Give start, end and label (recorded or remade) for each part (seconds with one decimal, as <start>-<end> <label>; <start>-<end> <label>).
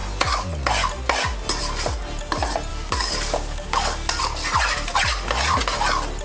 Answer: 0.0-2.7 recorded; 2.7-4.2 remade; 4.2-6.2 recorded